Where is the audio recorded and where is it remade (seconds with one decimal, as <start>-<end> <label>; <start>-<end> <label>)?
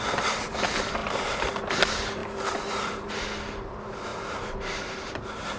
0.0-1.0 recorded; 1.0-1.7 remade; 1.7-2.2 recorded; 2.2-3.1 remade; 3.1-4.1 recorded; 4.1-5.6 remade